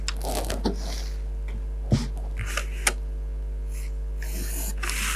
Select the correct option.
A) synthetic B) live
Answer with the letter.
B